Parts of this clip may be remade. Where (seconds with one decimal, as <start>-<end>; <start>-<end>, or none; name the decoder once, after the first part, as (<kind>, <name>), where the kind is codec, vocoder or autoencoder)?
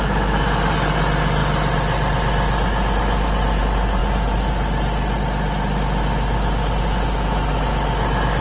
none